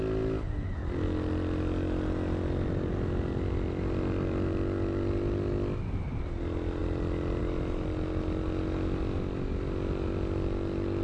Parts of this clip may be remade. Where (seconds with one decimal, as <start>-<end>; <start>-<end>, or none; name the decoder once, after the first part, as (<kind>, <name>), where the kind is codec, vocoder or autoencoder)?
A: none